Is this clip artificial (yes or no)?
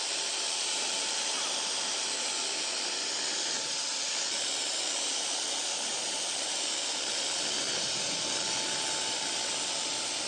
no